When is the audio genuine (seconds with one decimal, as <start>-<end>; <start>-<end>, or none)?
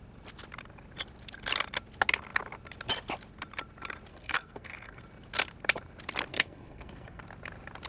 0.0-4.1; 5.0-6.3; 7.2-7.9